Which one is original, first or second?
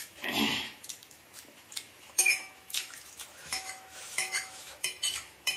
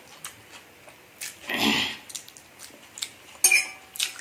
second